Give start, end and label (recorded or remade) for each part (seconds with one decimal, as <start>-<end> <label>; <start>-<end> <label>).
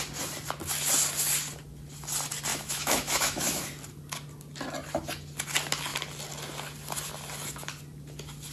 0.0-2.5 recorded; 2.5-3.6 remade; 3.6-8.5 recorded